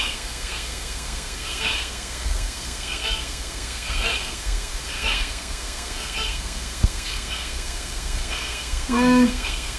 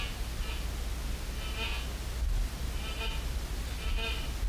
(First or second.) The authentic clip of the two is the second